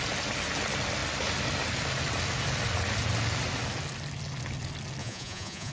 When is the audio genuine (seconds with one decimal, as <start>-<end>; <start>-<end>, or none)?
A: 0.0-5.0